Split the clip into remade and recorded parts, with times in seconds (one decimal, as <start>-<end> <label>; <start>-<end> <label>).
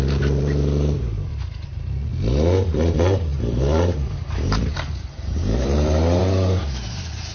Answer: 0.0-2.1 remade; 2.1-2.7 recorded; 2.7-7.3 remade